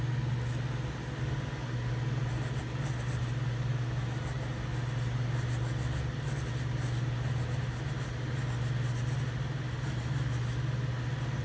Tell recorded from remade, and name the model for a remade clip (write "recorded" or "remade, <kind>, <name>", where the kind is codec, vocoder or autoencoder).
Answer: recorded